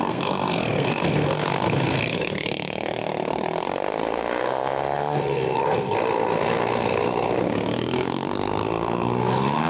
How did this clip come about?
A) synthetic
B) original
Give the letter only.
A